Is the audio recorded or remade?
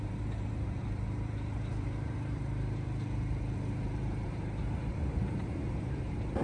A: remade